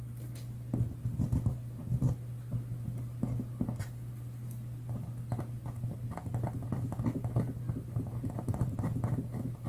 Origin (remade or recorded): recorded